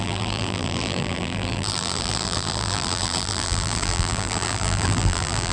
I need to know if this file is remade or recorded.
remade